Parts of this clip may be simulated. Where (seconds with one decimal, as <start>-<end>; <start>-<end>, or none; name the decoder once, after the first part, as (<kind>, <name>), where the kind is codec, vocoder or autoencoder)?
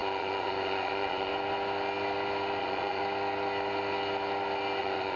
0.0-1.3 (vocoder, Vocos); 2.6-3.0; 4.8-5.2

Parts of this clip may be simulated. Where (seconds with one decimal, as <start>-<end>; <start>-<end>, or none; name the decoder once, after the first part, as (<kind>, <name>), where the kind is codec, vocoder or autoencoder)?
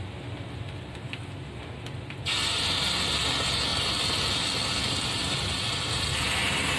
none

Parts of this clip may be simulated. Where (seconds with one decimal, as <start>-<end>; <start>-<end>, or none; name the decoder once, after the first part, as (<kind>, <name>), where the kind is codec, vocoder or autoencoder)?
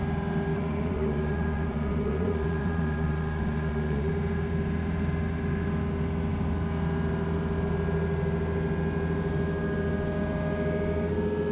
0.5-4.1 (vocoder, Vocos)